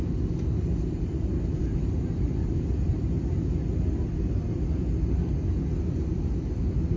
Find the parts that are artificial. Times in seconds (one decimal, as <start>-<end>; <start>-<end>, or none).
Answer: 1.1-1.6; 2.4-3.1; 6.1-7.0